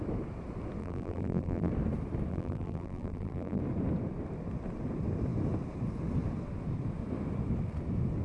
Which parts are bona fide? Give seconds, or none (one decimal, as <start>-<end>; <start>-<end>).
0.0-0.8; 1.7-2.3; 3.6-8.2